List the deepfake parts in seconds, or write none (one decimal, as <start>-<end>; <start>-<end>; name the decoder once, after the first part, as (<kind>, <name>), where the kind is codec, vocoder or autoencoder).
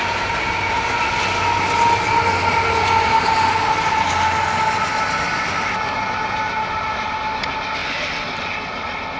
none